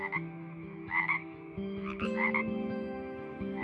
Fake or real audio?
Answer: fake